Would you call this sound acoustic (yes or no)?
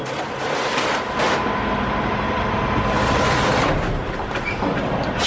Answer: yes